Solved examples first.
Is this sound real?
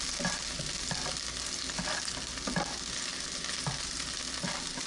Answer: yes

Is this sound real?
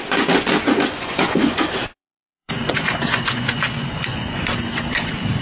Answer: no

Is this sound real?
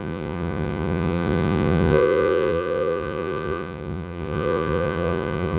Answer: no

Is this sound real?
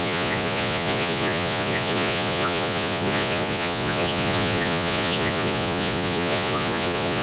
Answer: no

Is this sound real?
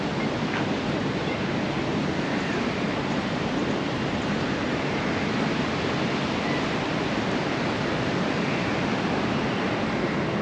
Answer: yes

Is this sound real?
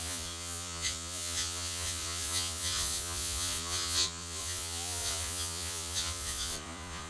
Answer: no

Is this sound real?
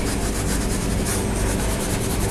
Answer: yes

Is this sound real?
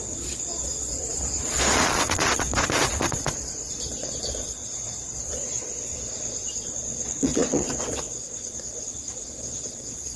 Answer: no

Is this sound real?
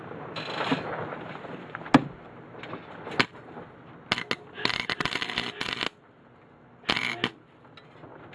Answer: yes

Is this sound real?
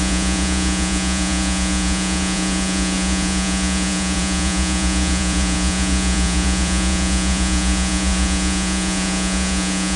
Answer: no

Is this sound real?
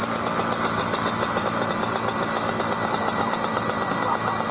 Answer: yes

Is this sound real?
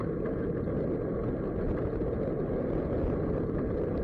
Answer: yes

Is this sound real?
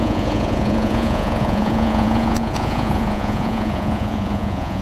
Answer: no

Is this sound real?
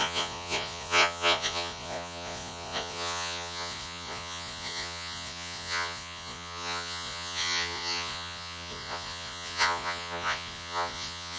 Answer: no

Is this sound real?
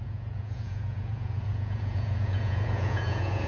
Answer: no